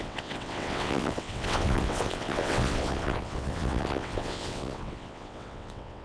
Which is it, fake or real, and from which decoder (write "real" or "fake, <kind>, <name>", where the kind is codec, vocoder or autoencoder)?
fake, vocoder, WaveNeXt